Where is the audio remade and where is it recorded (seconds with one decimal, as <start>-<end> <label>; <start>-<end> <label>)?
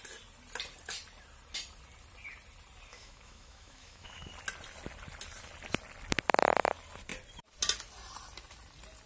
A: 0.0-2.9 recorded; 2.9-4.3 remade; 4.3-9.1 recorded